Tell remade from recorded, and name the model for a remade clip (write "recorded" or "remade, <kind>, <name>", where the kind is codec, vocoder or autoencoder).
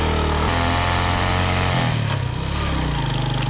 recorded